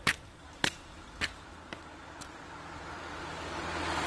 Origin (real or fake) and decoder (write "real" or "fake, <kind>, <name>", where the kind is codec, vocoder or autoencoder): real